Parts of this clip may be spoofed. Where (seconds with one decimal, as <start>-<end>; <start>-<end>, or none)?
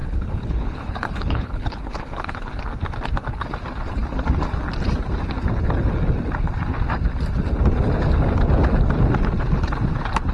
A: 0.0-2.5